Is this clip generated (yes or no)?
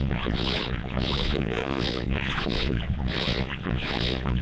yes